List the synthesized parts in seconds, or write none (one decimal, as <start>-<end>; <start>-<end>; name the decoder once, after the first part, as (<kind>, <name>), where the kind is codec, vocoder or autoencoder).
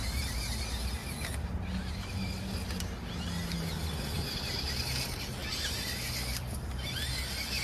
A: none